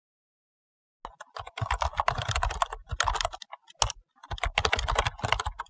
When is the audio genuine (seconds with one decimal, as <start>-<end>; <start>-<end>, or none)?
0.0-5.7